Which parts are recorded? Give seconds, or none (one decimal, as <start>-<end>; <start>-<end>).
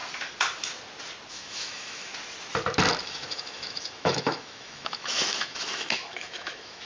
0.0-1.3; 2.1-3.0